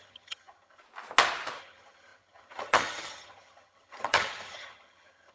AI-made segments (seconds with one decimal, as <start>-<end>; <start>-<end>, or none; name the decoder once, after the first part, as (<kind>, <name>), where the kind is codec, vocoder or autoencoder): 0.0-0.8 (vocoder, HiFi-GAN); 1.6-5.3